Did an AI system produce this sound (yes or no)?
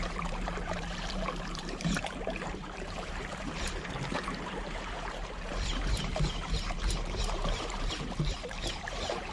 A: yes